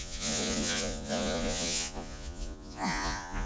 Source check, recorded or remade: remade